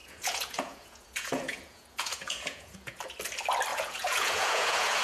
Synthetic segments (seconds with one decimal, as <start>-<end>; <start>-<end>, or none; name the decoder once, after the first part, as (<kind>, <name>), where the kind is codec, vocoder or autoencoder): 0.0-3.0 (vocoder, Vocos); 3.7-5.0